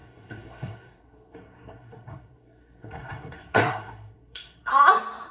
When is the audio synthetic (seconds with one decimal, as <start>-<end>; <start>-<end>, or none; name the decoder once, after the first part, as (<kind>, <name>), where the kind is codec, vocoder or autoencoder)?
0.0-4.7 (codec, SNAC)